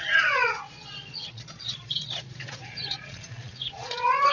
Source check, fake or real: fake